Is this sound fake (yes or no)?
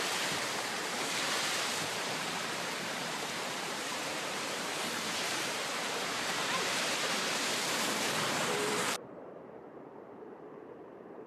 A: yes